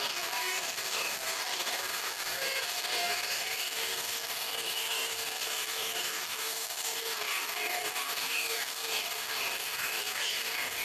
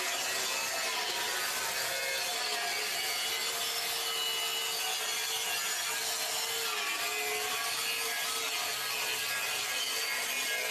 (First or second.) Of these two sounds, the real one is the second